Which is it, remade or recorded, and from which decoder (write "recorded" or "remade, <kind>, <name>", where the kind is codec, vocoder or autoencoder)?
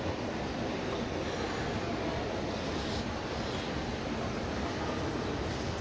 recorded